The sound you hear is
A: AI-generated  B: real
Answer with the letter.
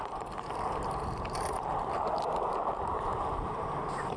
A